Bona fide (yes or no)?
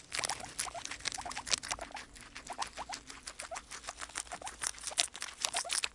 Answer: yes